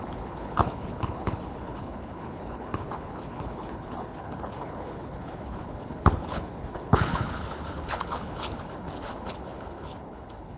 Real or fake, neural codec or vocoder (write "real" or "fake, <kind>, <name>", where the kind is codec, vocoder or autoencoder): fake, codec, HILCodec